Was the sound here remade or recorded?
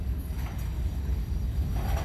remade